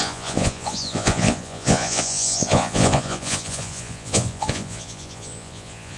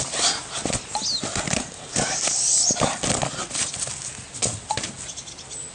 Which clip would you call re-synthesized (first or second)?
first